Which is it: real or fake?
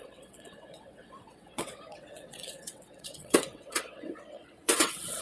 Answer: fake